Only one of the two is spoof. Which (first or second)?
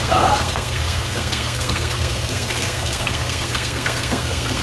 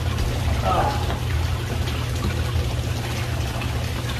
first